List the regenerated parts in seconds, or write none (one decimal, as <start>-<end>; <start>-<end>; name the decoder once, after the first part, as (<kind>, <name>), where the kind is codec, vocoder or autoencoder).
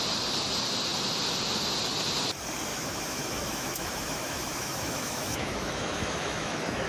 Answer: 2.7-6.9 (autoencoder, DAC-VAE)